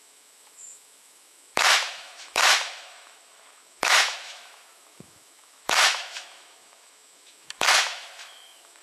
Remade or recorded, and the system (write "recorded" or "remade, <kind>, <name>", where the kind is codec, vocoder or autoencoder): remade, autoencoder, DAC-VAE